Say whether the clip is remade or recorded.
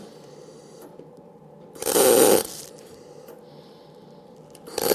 remade